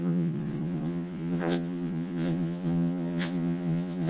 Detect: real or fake fake